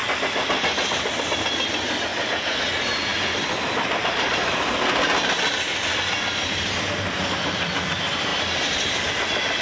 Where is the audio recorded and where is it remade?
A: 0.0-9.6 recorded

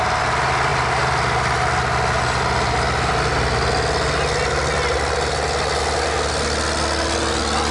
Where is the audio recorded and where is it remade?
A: 0.0-7.7 recorded

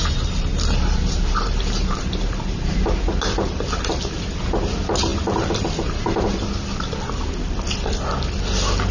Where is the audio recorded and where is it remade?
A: 0.0-2.8 remade; 2.8-8.9 recorded

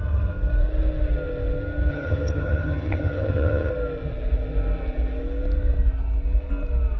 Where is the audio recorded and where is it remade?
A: 0.0-1.9 recorded; 1.9-3.7 remade; 3.7-7.0 recorded

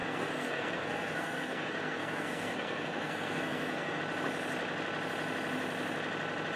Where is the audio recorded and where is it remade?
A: 0.0-4.0 remade; 4.0-6.6 recorded

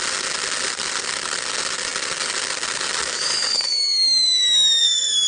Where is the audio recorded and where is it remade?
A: 0.0-3.0 recorded; 3.0-5.3 remade